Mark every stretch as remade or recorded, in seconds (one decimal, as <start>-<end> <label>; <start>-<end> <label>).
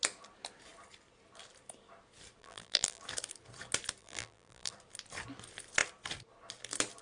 0.0-2.4 recorded; 2.4-3.0 remade; 3.0-4.0 recorded; 4.0-4.7 remade; 4.7-7.0 recorded